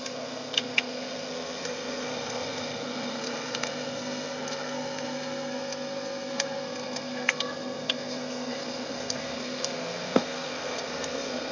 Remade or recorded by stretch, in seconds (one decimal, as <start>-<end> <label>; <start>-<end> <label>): 0.0-11.5 remade